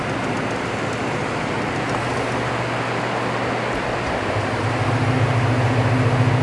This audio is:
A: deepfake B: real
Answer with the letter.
B